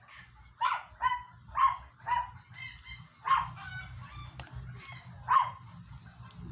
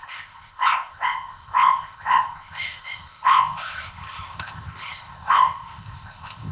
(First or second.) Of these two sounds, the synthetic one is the second